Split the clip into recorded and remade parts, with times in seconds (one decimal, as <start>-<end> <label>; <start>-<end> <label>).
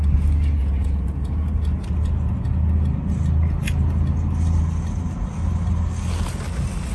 0.0-0.6 recorded; 0.6-1.3 remade; 1.3-6.9 recorded